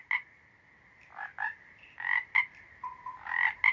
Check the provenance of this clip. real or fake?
real